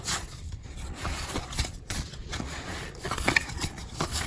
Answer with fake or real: fake